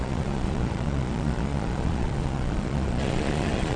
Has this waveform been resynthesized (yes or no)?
yes